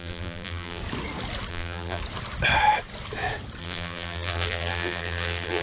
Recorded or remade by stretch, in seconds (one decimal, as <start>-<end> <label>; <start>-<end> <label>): 0.0-0.8 remade; 0.8-1.5 recorded; 1.5-2.0 remade; 2.0-3.6 recorded; 3.6-5.6 remade